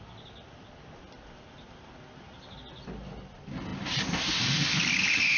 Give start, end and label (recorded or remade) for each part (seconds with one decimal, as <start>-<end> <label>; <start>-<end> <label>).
0.0-5.4 recorded